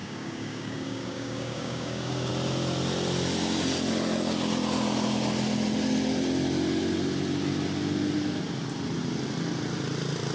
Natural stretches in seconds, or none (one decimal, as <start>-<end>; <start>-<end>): 2.3-10.3